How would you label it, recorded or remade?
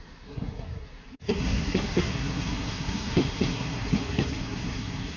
remade